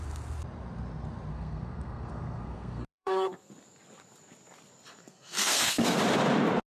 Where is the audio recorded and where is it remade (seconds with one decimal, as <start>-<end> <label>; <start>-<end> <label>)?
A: 0.0-1.3 recorded; 1.3-3.5 remade; 3.5-5.0 recorded; 5.0-6.0 remade; 6.0-6.8 recorded